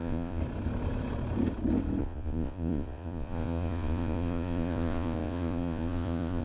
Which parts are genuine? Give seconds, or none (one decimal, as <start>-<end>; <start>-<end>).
0.4-2.0